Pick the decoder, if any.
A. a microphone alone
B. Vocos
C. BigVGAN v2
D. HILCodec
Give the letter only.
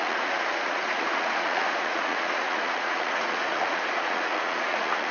B